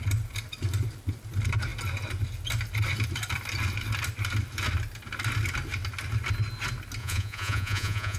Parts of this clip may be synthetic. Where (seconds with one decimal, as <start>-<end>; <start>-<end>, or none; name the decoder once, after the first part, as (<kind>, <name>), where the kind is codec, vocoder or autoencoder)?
7.0-8.2 (vocoder, Vocos)